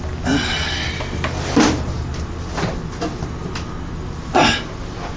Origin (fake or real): real